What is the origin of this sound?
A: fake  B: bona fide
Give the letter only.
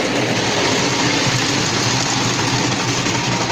B